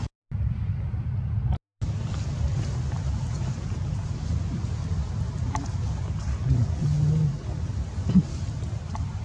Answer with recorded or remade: recorded